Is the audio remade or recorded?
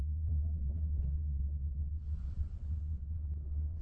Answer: remade